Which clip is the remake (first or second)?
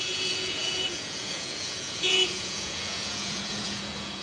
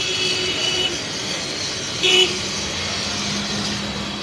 first